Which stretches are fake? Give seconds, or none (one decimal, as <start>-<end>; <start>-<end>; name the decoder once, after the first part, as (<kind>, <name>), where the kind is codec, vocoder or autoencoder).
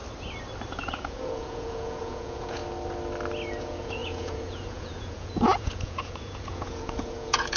0.7-2.6 (vocoder, Vocos); 3.6-7.6